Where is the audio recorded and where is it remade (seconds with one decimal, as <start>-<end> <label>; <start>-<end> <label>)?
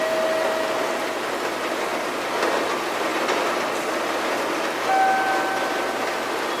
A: 0.0-6.6 recorded